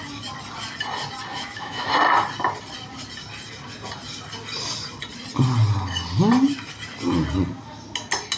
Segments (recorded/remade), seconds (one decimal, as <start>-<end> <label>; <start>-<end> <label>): 0.0-1.3 recorded; 1.3-1.9 remade; 1.9-8.4 recorded

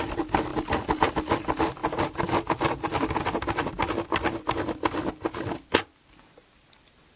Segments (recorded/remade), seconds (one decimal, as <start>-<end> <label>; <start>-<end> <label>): 0.0-7.2 recorded

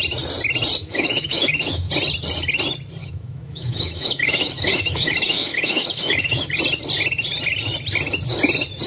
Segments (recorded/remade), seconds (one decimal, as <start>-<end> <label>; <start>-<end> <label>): 0.0-0.8 recorded; 0.8-1.9 remade; 1.9-3.0 recorded; 3.0-6.5 remade; 6.5-8.9 recorded